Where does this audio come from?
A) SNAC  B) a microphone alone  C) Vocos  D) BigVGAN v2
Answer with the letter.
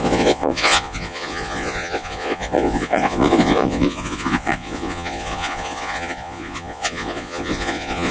C